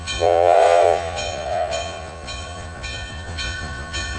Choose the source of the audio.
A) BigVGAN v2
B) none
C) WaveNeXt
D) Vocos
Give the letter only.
D